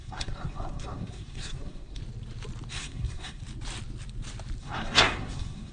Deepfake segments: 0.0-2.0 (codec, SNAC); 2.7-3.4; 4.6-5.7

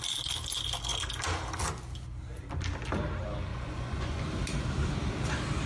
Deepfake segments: 3.5-4.2 (vocoder, Vocos)

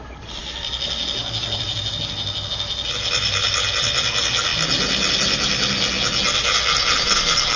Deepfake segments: none

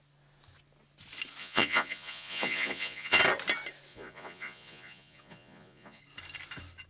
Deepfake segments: 1.4-3.2 (vocoder, Vocos); 3.9-6.0

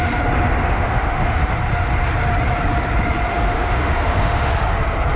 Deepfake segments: 0.6-1.5 (autoencoder, DAC-VAE); 3.3-4.5

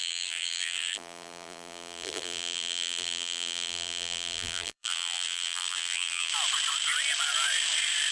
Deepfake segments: 0.0-6.3 (vocoder, BigVGAN v2)

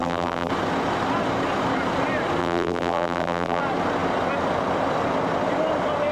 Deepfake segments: 0.0-0.5 (vocoder, BigVGAN v2); 2.4-3.6

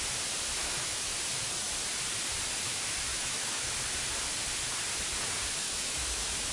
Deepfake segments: 0.6-1.1 (autoencoder, DAC-VAE); 3.1-3.7; 5.6-6.5